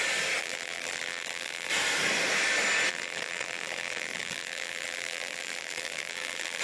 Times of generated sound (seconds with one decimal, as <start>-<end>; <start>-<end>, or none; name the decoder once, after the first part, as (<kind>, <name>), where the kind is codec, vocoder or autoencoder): 0.4-1.7 (vocoder, BigVGAN v2); 2.9-6.6